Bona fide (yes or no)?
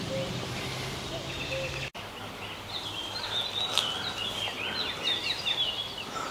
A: yes